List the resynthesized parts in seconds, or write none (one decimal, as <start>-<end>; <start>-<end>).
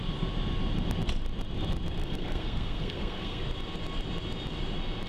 2.0-3.4